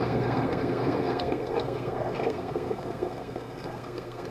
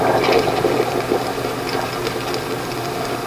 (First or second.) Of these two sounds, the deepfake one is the first